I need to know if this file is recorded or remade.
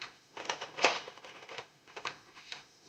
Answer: remade